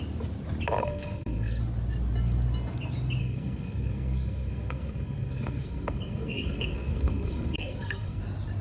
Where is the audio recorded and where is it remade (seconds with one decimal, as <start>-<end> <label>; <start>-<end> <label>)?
0.0-0.8 recorded; 0.8-1.6 remade; 1.6-3.2 recorded; 3.2-8.2 remade; 8.2-8.6 recorded